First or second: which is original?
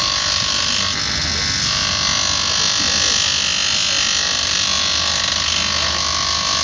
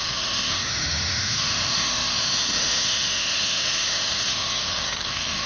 first